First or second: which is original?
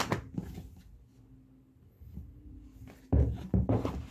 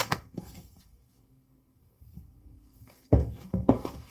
first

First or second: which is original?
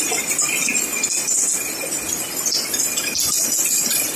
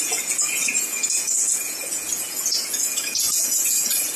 first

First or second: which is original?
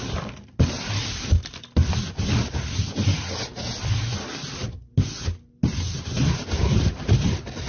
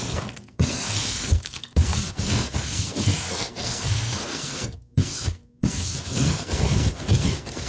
first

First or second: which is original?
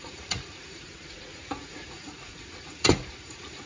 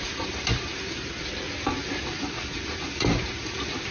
second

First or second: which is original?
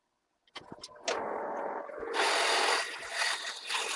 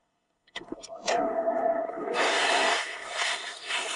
first